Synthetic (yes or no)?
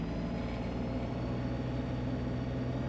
no